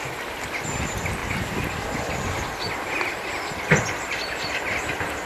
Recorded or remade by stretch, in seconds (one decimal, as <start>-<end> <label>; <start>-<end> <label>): 0.0-5.3 recorded

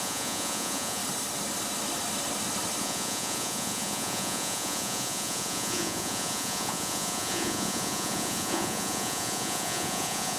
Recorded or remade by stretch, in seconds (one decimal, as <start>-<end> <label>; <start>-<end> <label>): 0.0-1.0 remade; 1.0-2.8 recorded; 2.8-10.4 remade

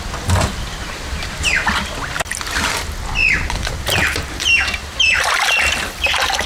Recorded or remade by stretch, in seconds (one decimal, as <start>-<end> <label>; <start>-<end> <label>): 0.0-0.7 recorded; 0.7-1.7 remade; 1.7-3.2 recorded; 3.2-6.5 remade

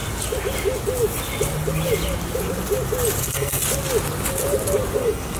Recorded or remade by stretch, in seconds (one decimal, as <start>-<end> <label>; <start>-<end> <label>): 0.0-3.2 recorded; 3.2-3.6 remade; 3.6-5.0 recorded; 5.0-5.4 remade

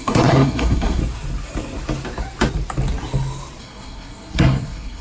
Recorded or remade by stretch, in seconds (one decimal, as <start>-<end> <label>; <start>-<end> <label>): 0.0-1.0 remade; 1.0-3.6 recorded; 3.6-5.0 remade